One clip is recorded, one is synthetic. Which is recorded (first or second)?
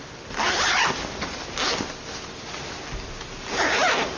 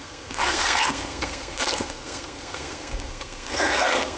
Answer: first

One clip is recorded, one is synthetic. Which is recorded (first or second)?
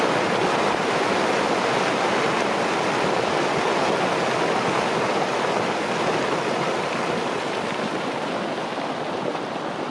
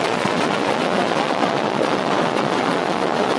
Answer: first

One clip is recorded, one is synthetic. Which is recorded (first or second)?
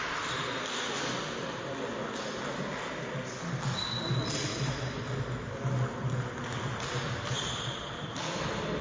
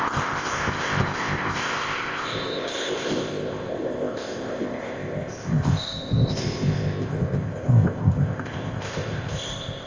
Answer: first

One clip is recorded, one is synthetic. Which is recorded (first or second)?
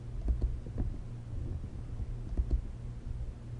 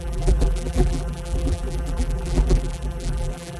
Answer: first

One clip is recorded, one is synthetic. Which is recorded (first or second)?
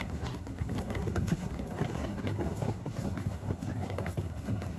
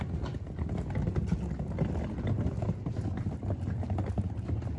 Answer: second